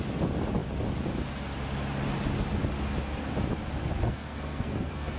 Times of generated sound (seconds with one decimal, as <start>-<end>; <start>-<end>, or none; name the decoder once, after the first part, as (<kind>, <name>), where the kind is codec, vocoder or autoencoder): 3.8-5.2 (codec, SNAC)